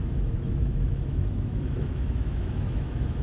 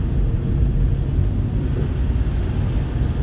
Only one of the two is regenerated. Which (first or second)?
first